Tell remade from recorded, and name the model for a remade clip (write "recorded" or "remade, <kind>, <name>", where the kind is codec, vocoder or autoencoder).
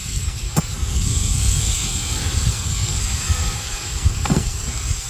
remade, codec, SNAC